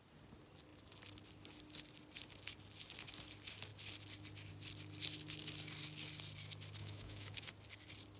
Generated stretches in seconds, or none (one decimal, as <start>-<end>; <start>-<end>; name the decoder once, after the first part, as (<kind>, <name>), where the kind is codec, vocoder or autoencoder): 6.8-7.5 (autoencoder, DAC-VAE)